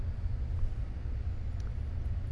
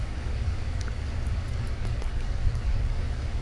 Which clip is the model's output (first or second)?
second